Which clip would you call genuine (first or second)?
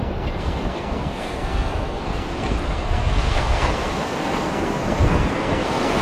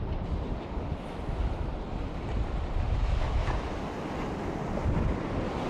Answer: second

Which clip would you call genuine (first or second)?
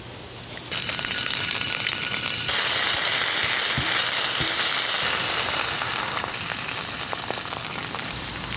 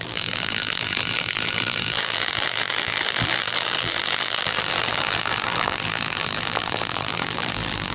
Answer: first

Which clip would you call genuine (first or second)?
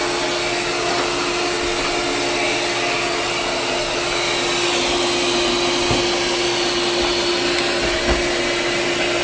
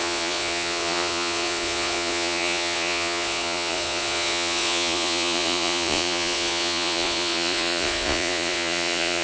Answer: first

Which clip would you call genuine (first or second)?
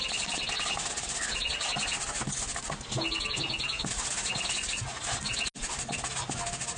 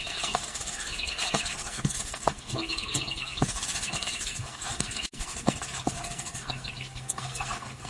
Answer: first